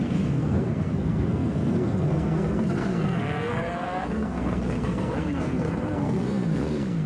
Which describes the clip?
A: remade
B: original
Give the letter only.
A